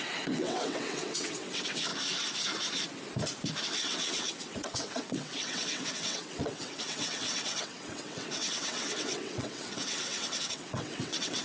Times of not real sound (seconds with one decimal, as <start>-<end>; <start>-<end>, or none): 0.0-1.9; 3.6-11.4